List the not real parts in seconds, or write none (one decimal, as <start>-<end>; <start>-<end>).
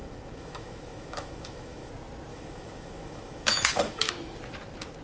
0.0-1.9; 2.3-4.1